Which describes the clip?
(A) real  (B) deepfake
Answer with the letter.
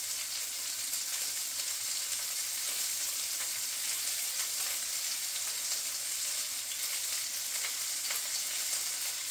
A